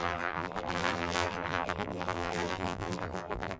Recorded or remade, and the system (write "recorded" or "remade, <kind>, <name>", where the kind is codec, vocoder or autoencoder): remade, vocoder, BigVGAN v2